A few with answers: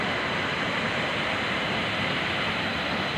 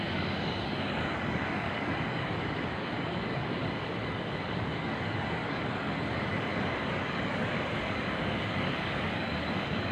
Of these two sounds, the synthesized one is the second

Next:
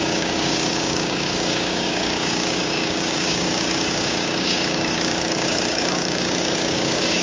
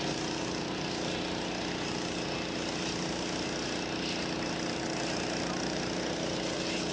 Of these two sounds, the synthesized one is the first